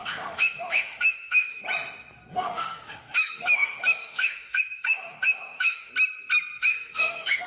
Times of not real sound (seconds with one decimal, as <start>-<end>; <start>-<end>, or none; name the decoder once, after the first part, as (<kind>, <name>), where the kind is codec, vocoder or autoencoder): 0.0-1.6 (autoencoder, DAC-VAE); 2.3-5.9; 6.6-7.5